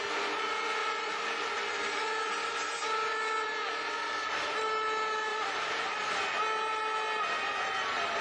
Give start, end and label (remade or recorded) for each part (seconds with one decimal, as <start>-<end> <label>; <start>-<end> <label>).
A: 0.0-0.8 recorded; 0.8-2.2 remade; 2.2-5.3 recorded; 5.3-8.2 remade